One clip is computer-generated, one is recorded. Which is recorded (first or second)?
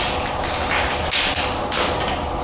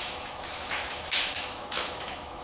first